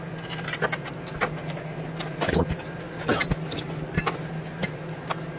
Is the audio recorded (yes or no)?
yes